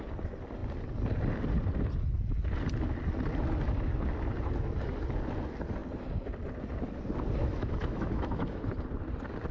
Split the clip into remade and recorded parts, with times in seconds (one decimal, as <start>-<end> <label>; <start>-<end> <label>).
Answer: 0.0-7.4 recorded; 7.4-8.6 remade; 8.6-9.5 recorded